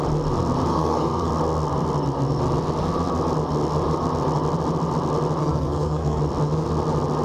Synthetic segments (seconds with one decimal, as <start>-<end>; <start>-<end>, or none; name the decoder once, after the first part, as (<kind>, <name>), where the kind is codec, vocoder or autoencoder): 0.7-1.3 (codec, SNAC); 5.4-6.2